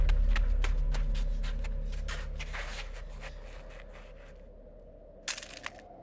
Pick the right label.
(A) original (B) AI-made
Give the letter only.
A